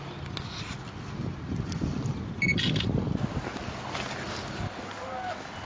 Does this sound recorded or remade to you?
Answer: recorded